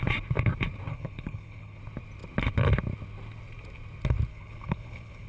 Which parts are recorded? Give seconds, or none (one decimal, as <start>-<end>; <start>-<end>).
0.0-0.9; 1.8-4.3